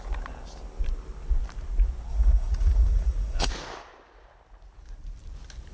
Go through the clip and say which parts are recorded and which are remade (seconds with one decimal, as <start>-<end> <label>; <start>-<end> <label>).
0.0-2.1 recorded; 2.1-3.5 remade; 3.5-5.7 recorded

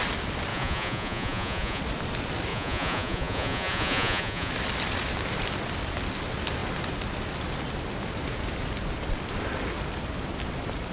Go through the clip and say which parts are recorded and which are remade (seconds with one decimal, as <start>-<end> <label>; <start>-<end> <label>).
0.0-0.5 recorded; 0.5-1.8 remade; 1.8-2.5 recorded; 2.5-4.5 remade; 4.5-10.9 recorded

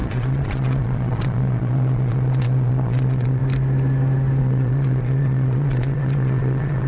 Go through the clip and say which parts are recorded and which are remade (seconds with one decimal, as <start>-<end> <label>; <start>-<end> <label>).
0.0-3.4 remade; 3.4-4.4 recorded; 4.4-6.9 remade